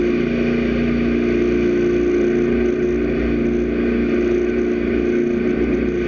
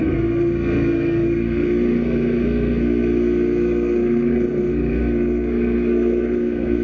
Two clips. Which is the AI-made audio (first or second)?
second